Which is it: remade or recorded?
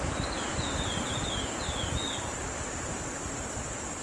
recorded